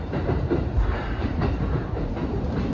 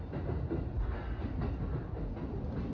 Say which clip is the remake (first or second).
first